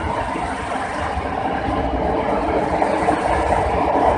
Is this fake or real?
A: real